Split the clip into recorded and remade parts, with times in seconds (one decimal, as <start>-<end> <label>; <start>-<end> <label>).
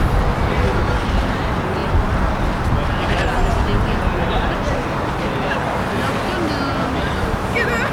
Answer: 0.0-7.9 recorded